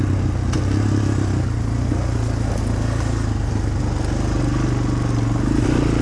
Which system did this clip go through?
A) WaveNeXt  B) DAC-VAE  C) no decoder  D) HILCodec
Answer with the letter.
C